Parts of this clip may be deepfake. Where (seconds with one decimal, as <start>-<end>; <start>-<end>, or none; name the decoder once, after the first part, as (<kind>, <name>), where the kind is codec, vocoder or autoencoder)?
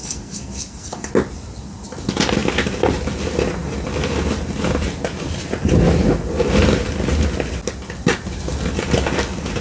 0.0-1.1 (codec, SNAC)